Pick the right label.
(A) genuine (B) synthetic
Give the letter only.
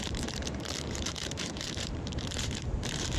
B